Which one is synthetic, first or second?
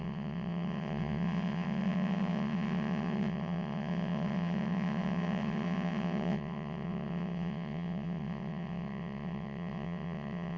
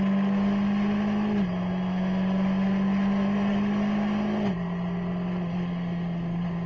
first